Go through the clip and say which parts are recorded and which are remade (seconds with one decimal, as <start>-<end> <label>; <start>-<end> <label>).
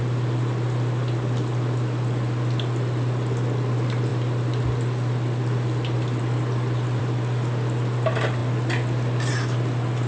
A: 0.0-10.1 recorded